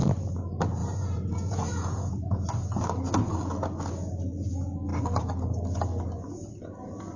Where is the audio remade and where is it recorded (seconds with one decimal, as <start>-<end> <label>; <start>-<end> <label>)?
0.0-0.8 recorded; 0.8-2.5 remade; 2.5-7.2 recorded